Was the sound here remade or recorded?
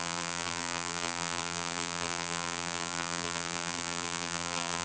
remade